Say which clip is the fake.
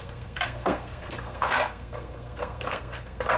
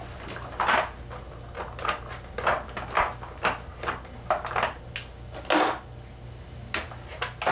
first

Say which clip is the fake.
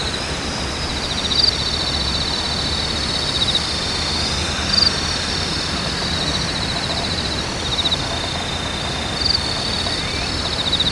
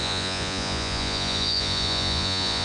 second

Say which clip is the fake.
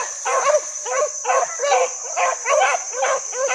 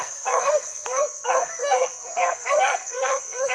second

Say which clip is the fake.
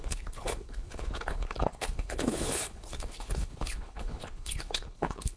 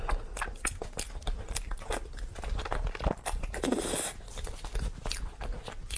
first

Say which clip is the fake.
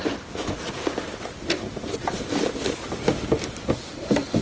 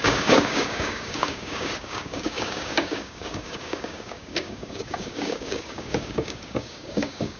second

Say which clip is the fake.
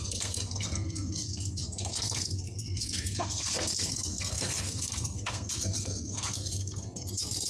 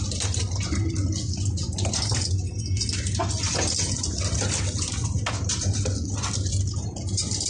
first